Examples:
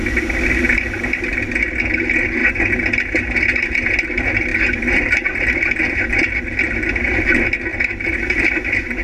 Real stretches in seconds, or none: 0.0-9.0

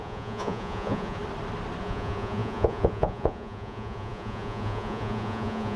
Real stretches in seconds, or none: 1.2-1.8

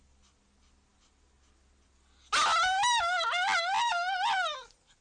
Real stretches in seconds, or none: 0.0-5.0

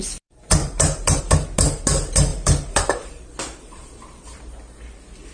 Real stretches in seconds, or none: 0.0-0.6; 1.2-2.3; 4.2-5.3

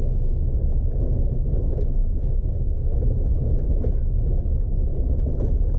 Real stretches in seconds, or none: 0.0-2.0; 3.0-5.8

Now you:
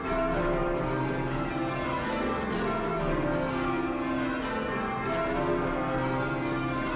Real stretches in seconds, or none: 0.0-0.6; 1.5-7.0

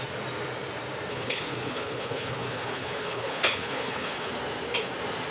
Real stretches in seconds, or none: 0.0-1.1; 4.3-5.3